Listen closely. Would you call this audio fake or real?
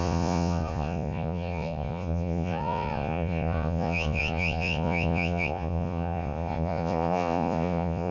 fake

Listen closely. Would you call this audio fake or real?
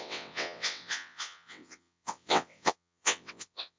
fake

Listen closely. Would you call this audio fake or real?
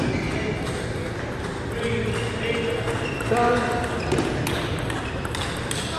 real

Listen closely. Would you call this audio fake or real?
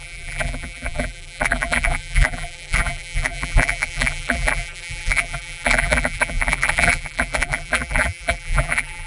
fake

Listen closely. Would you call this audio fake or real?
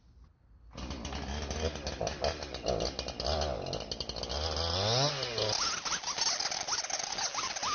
real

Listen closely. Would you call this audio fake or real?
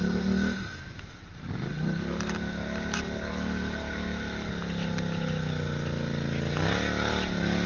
real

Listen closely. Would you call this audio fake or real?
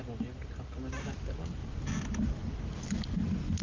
real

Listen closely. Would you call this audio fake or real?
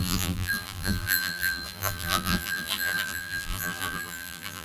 fake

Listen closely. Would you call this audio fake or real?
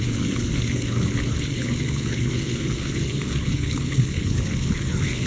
fake